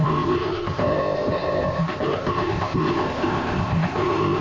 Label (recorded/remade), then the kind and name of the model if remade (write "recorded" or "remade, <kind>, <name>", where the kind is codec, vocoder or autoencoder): remade, codec, ZipCodec